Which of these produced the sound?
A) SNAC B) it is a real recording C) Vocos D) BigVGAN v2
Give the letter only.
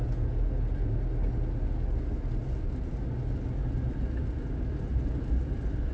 B